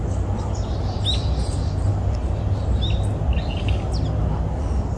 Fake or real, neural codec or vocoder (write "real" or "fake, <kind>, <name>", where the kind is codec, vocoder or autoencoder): real